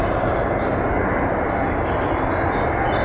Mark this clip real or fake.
real